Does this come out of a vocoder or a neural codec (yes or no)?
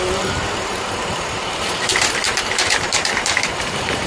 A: yes